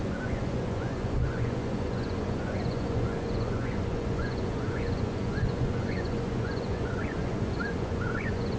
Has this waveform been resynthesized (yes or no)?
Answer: yes